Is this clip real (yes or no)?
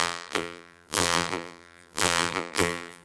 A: no